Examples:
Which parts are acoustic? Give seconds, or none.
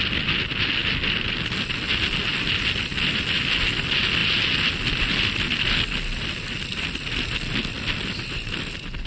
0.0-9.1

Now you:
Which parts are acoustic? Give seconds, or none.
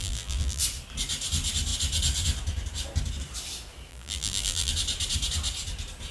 0.6-3.9; 4.7-6.1